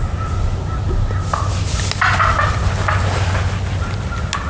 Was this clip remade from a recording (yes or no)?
no